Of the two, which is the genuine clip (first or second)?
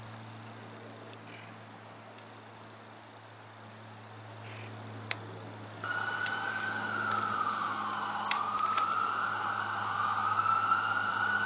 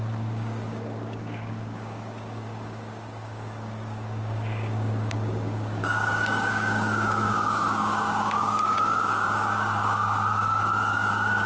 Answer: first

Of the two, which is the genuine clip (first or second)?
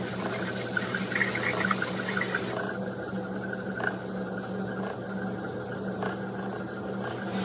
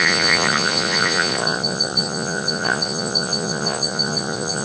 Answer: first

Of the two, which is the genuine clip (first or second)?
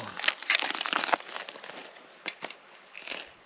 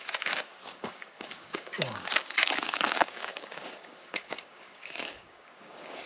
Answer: first